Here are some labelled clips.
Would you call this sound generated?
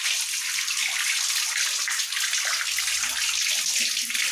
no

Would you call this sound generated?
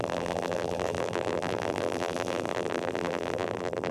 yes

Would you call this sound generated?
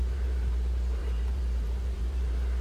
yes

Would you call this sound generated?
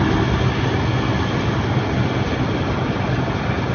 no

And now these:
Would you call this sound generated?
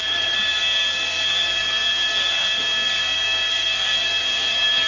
yes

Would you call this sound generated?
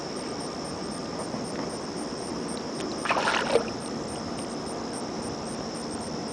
no